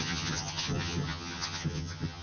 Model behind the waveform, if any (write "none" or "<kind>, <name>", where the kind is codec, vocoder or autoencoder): vocoder, HiFi-GAN